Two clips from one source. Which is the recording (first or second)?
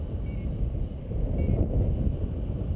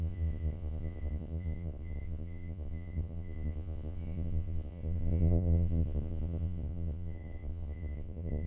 first